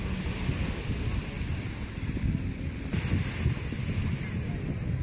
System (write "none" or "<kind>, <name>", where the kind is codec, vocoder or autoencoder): none